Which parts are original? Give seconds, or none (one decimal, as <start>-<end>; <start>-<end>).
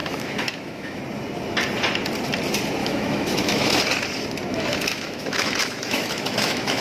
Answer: 1.0-2.8; 3.8-4.5